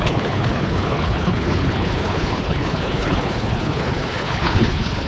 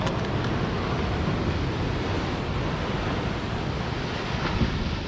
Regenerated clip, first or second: first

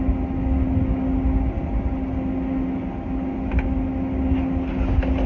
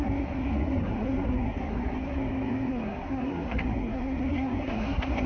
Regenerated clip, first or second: second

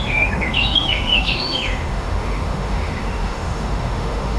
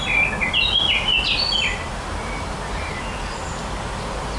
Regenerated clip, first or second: first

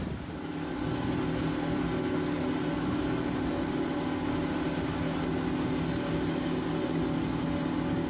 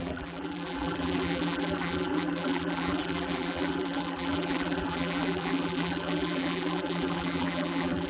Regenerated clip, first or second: second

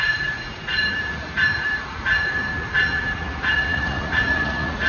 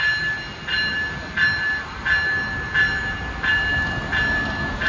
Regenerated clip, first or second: first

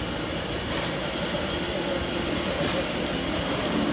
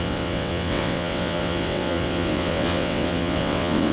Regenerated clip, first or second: second